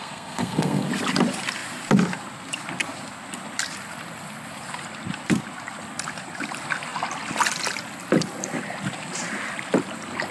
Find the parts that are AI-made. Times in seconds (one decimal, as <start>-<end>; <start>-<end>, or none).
0.0-0.9